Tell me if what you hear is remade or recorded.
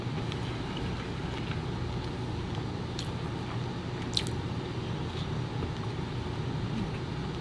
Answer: recorded